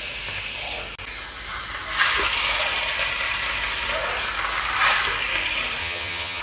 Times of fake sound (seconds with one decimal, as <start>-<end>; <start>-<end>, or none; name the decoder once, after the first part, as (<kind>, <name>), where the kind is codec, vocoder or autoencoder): 5.8-6.4 (vocoder, HiFi-GAN)